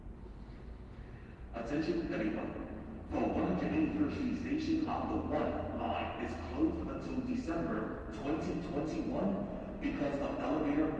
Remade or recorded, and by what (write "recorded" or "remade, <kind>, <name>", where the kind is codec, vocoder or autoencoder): recorded